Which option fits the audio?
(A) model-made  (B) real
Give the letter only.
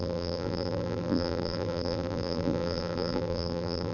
A